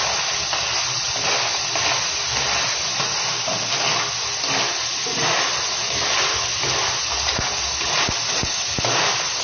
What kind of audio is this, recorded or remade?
recorded